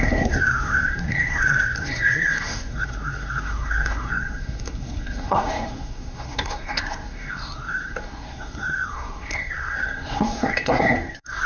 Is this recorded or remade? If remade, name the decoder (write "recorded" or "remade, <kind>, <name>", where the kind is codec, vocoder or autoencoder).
remade, codec, SNAC